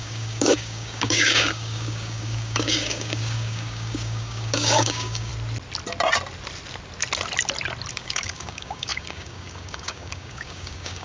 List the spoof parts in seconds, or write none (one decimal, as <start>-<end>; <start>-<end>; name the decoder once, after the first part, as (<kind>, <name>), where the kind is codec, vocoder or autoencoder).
0.0-5.3 (codec, DAC); 7.9-11.0